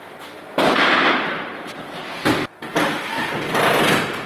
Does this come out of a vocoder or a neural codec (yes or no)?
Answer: no